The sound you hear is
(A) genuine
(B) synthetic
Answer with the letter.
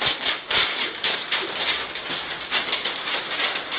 A